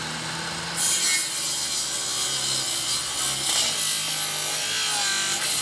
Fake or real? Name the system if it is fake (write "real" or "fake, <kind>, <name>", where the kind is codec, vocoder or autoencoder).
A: real